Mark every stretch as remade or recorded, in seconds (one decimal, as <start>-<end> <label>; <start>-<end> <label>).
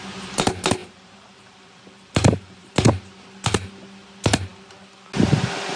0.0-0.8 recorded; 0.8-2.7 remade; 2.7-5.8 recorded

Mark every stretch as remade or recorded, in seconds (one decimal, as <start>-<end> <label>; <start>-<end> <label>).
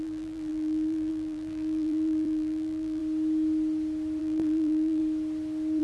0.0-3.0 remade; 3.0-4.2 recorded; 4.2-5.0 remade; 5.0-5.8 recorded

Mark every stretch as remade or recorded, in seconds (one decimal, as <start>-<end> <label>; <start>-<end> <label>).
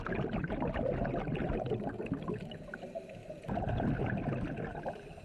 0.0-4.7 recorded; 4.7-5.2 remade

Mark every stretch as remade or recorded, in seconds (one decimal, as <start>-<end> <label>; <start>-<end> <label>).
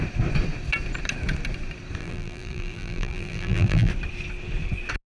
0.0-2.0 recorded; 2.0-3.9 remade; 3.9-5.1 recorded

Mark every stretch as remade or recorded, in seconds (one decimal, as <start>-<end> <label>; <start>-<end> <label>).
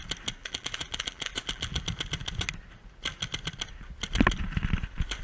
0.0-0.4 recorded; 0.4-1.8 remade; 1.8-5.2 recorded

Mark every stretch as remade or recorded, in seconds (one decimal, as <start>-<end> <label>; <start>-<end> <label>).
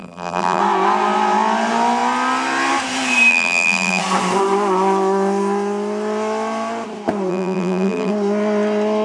0.0-0.6 remade; 0.6-3.3 recorded; 3.3-4.0 remade; 4.0-7.3 recorded; 7.3-8.1 remade; 8.1-9.0 recorded